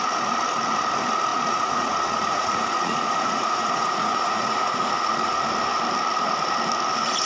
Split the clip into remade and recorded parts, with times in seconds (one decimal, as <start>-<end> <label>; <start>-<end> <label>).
0.0-1.3 recorded; 1.3-5.4 remade; 5.4-7.3 recorded

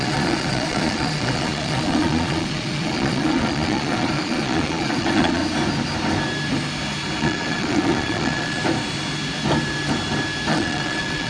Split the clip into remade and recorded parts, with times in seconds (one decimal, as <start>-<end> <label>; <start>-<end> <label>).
0.0-5.4 remade; 5.4-7.2 recorded; 7.2-8.6 remade; 8.6-10.5 recorded; 10.5-11.3 remade

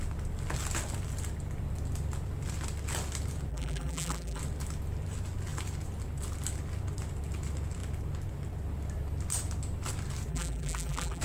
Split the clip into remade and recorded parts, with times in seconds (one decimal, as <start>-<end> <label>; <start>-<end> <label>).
0.0-3.5 recorded; 3.5-4.4 remade; 4.4-10.3 recorded; 10.3-11.2 remade

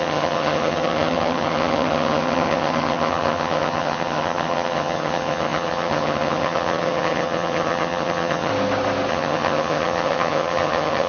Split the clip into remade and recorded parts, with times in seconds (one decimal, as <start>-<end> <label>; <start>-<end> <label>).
0.0-8.5 remade; 8.5-9.1 recorded; 9.1-11.1 remade